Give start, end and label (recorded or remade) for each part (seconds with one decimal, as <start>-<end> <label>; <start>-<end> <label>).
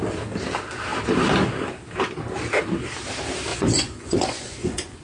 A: 0.0-3.5 recorded; 3.5-5.0 remade